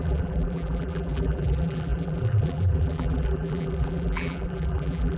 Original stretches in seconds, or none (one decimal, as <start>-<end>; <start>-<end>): none